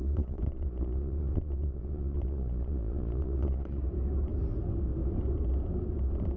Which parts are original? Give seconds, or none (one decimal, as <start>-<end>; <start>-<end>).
3.8-6.4